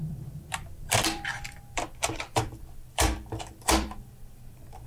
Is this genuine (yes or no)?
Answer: no